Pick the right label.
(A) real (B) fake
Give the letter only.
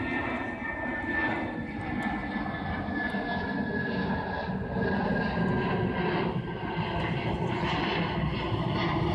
A